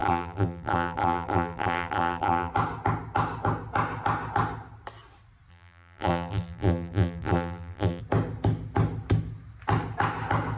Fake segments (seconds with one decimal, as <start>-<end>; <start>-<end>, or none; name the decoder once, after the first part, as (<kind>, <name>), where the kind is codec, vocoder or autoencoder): 0.0-2.5 (vocoder, BigVGAN v2); 5.5-8.0